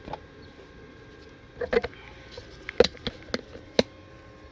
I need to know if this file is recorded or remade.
recorded